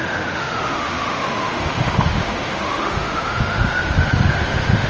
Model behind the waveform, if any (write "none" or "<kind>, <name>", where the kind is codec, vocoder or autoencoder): autoencoder, DAC-VAE